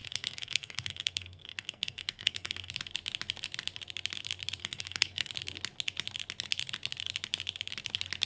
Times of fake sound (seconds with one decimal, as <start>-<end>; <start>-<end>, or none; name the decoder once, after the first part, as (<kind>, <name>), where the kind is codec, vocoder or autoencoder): 0.0-2.7 (codec, SNAC); 4.6-5.3